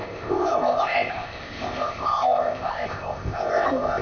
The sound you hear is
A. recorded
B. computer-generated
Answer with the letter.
B